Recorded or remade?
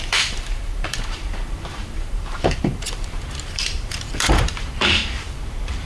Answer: remade